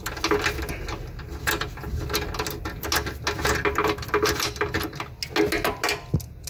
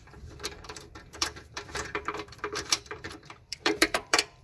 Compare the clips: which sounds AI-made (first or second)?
second